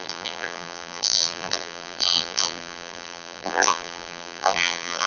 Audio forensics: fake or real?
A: fake